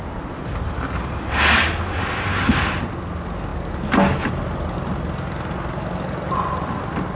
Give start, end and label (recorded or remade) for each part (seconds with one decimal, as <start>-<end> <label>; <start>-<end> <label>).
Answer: 0.0-7.2 recorded